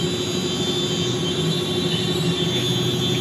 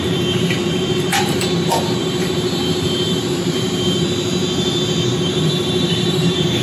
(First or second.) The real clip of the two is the first